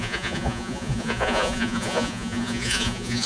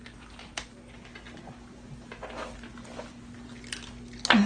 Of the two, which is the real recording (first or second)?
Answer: second